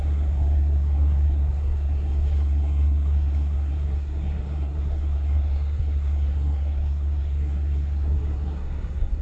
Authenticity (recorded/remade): remade